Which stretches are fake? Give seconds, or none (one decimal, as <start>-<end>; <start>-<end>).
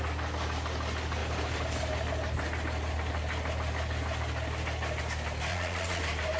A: 5.5-6.0